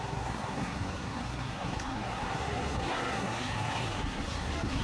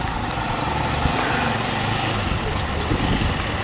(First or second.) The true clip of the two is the second